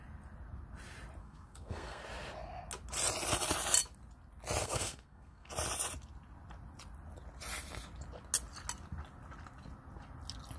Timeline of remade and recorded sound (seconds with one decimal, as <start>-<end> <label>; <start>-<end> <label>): 0.0-1.2 recorded; 1.2-2.0 remade; 2.0-4.6 recorded; 4.6-5.5 remade; 5.5-10.6 recorded